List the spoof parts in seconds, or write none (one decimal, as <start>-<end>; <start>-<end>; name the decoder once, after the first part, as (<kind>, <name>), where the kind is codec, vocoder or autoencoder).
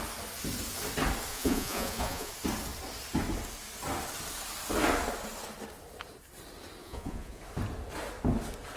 1.3-2.3 (vocoder, Vocos); 6.8-7.4